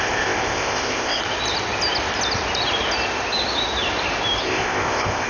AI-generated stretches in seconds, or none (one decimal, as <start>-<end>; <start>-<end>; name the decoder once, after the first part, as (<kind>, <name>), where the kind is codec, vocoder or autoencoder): 0.0-1.2 (codec, ZipCodec); 4.4-5.3